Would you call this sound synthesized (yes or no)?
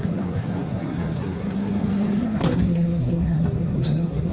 yes